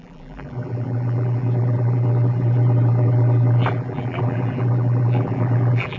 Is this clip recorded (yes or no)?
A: no